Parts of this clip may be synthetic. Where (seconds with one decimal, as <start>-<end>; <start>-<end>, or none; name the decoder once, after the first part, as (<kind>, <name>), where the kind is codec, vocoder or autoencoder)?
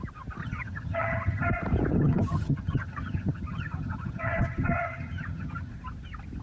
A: 0.4-1.5 (vocoder, HiFi-GAN); 1.9-5.7